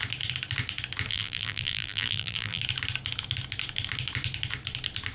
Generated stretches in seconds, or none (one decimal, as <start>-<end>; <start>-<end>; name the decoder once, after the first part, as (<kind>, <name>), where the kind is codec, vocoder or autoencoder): 1.1-2.6 (vocoder, BigVGAN v2)